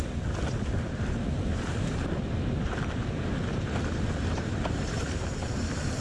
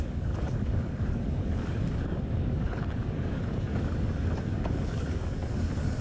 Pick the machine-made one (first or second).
second